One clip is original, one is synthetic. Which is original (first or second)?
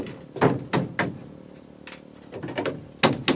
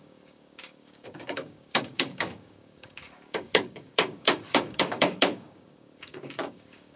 first